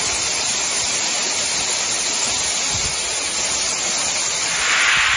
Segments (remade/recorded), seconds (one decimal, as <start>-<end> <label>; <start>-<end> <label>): 0.0-5.2 recorded